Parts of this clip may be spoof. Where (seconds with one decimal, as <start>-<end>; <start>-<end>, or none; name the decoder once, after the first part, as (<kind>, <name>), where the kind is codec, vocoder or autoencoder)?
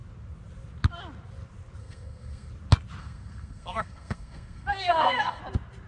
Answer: 1.8-2.5 (codec, SNAC); 3.0-5.4